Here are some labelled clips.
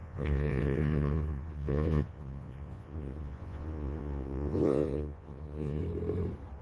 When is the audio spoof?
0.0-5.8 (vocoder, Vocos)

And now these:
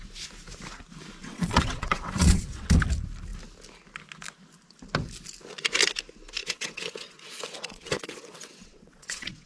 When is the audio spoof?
1.2-2.7 (vocoder, WaveNeXt); 6.4-9.5

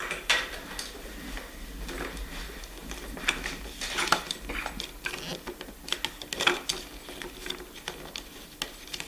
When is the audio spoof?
none

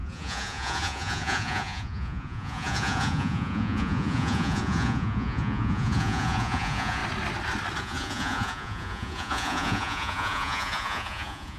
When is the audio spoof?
0.0-7.0 (vocoder, Vocos); 7.8-11.6